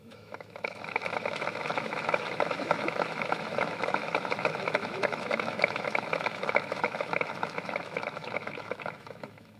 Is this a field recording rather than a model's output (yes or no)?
no